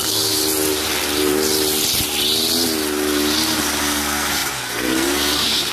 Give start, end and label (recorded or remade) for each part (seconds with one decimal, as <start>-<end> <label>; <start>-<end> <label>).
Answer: 0.0-0.4 remade; 0.4-3.8 recorded; 3.8-5.7 remade